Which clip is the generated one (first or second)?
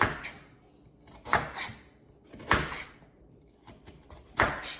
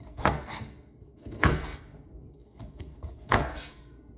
second